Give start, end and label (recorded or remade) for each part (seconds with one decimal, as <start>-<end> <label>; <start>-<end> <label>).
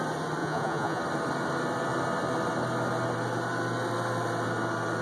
0.0-0.4 recorded; 0.4-1.0 remade; 1.0-5.0 recorded